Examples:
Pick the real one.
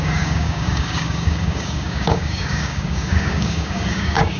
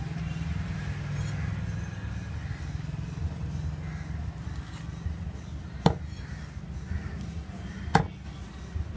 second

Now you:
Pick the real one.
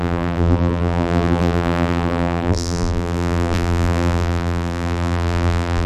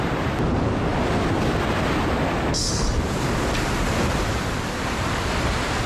second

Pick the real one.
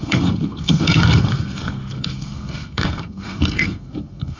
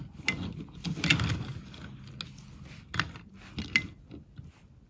second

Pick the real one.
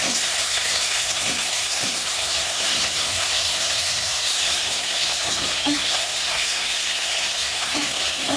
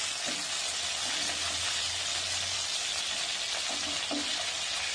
second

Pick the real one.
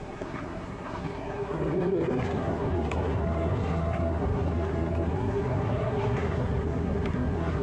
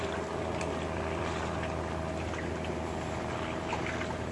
second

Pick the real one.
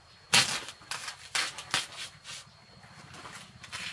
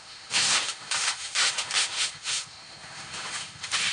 first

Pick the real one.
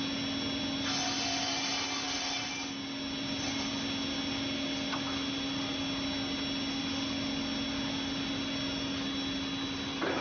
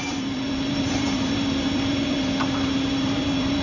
first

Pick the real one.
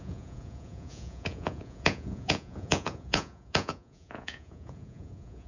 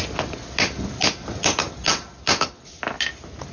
second